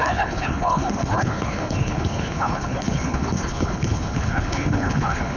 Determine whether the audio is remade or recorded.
remade